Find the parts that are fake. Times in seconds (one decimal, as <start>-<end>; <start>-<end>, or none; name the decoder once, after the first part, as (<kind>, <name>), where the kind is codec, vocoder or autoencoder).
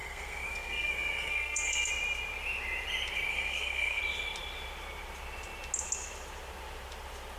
0.0-1.9 (codec, SNAC); 3.3-4.0